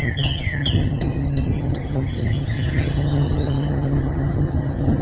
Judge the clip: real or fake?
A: fake